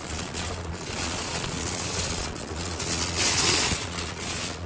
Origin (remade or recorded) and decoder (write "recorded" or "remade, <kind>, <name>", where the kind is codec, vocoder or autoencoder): remade, vocoder, Vocos